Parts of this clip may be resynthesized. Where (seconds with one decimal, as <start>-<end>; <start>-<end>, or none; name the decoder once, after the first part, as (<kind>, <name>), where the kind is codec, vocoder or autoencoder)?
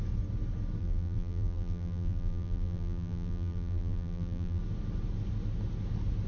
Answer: 0.8-4.6 (vocoder, BigVGAN v2)